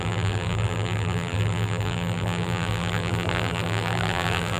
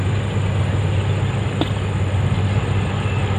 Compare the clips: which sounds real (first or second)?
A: second